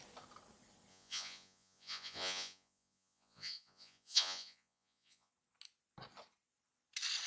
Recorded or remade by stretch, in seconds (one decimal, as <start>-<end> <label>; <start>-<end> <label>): 0.0-0.9 recorded; 0.9-5.3 remade; 5.3-7.3 recorded